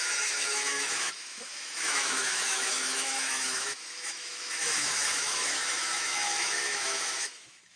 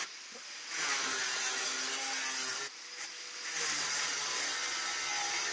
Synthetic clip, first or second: first